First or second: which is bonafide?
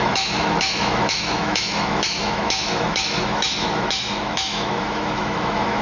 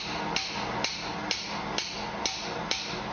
second